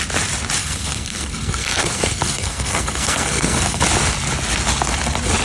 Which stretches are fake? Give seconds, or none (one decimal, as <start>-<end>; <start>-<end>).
0.6-3.8